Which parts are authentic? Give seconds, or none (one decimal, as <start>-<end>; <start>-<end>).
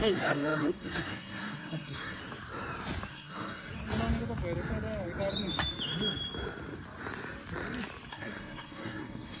2.2-3.1; 3.7-8.1